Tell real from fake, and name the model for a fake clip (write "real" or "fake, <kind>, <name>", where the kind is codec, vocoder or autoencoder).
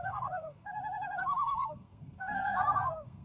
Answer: fake, codec, SNAC